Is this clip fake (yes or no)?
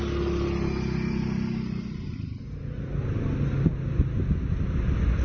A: no